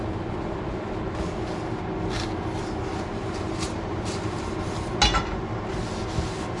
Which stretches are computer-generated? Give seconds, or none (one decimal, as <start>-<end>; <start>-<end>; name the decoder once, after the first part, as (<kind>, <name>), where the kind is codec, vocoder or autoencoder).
2.9-4.9 (vocoder, BigVGAN v2)